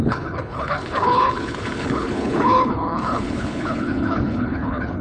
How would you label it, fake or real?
fake